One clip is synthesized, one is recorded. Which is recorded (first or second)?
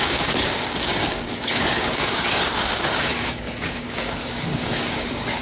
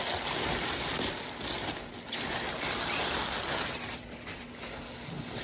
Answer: second